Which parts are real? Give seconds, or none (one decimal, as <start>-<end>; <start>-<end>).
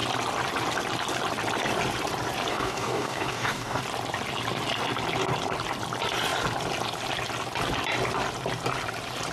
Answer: 0.0-2.5; 3.8-9.3